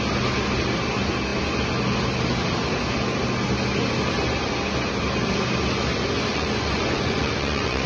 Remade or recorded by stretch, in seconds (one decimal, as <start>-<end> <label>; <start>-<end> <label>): 0.0-6.3 recorded; 6.3-7.9 remade